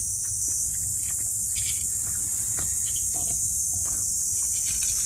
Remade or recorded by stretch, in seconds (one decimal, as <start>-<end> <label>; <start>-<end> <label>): 0.0-5.1 recorded